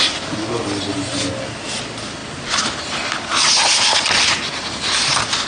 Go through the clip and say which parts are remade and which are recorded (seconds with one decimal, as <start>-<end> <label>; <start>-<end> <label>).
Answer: 0.0-5.5 recorded

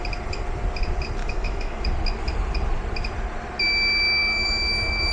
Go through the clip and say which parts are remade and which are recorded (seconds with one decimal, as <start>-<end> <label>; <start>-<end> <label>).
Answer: 0.0-1.2 recorded; 1.2-1.8 remade; 1.8-4.2 recorded; 4.2-5.1 remade

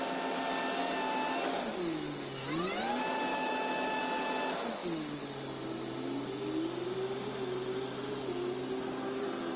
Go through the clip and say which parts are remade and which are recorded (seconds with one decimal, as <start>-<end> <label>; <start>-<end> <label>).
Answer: 0.0-3.3 recorded; 3.3-4.0 remade; 4.0-9.6 recorded

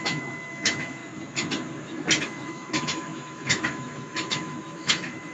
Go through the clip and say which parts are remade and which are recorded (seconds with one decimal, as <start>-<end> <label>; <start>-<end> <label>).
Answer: 0.0-1.0 remade; 1.0-2.2 recorded; 2.2-5.3 remade

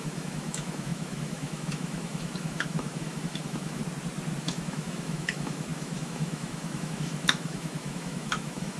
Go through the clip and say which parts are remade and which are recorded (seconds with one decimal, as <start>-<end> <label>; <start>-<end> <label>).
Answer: 0.0-3.8 remade; 3.8-4.4 recorded; 4.4-8.8 remade

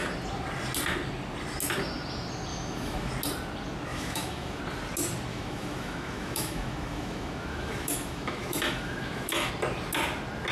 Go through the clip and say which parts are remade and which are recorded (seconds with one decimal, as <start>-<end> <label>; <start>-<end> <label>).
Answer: 0.0-2.5 recorded; 2.5-3.1 remade; 3.1-3.9 recorded; 3.9-4.6 remade; 4.6-5.3 recorded; 5.3-9.5 remade; 9.5-10.5 recorded

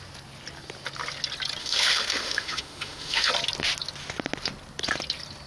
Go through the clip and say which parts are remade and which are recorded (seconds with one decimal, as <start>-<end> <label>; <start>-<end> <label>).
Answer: 0.0-1.6 recorded; 1.6-3.3 remade; 3.3-5.5 recorded

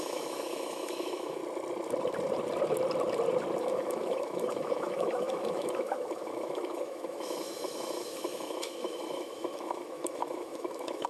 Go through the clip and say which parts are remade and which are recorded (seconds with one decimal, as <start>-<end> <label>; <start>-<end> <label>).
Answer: 0.0-1.4 remade; 1.4-3.6 recorded; 3.6-11.1 remade